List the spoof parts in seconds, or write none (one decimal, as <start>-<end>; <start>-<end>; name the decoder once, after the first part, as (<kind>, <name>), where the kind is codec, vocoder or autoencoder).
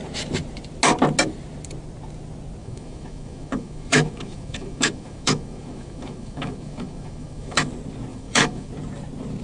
2.6-7.7 (autoencoder, DAC-VAE); 8.1-8.7